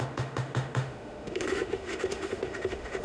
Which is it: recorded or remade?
remade